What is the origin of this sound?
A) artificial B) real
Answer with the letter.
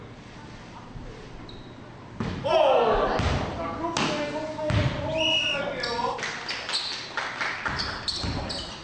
B